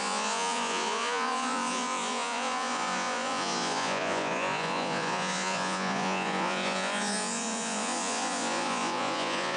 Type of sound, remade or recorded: remade